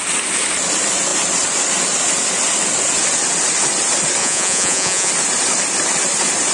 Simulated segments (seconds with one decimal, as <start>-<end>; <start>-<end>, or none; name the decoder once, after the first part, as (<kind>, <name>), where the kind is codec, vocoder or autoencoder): 4.2-5.1 (vocoder, Vocos)